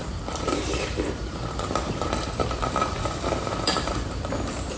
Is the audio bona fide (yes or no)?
no